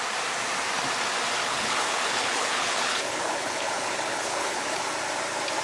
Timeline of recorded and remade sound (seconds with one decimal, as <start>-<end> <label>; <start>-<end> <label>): 0.0-1.4 recorded; 1.4-4.8 remade; 4.8-5.6 recorded